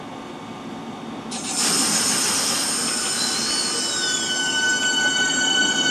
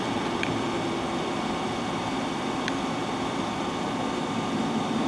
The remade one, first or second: second